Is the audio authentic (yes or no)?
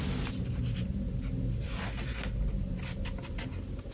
yes